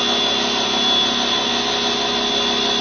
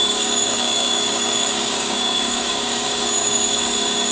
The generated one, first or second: second